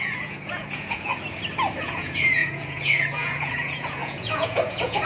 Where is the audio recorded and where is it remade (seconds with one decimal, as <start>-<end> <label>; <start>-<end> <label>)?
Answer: 0.0-1.1 remade; 1.1-1.8 recorded; 1.8-5.1 remade